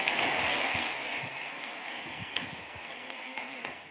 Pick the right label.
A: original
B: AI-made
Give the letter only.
B